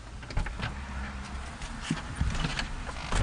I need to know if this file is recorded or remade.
recorded